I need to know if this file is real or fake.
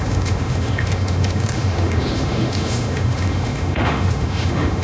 fake